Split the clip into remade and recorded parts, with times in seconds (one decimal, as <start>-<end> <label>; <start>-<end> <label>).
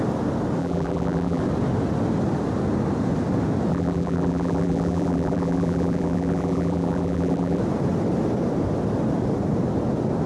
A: 0.0-0.6 recorded; 0.6-1.4 remade; 1.4-3.7 recorded; 3.7-7.6 remade; 7.6-10.3 recorded